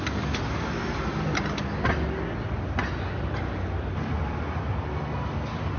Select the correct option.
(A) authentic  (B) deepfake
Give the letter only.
A